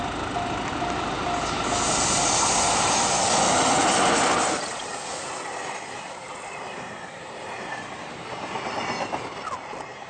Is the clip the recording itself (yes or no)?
yes